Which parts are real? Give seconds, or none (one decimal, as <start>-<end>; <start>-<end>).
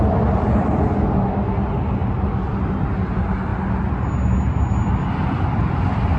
0.0-6.2